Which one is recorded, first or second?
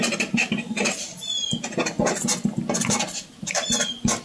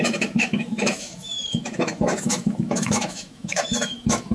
first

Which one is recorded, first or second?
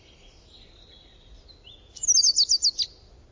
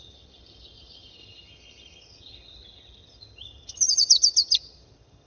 first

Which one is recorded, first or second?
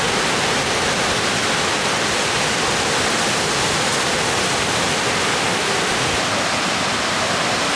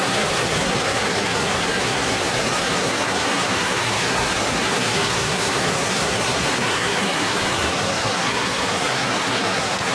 first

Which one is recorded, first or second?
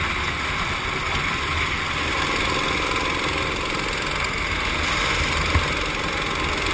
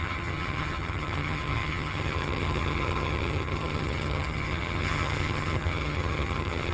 first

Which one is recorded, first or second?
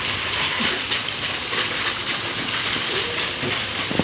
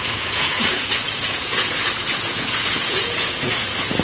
first